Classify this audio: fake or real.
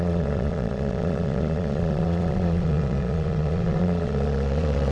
fake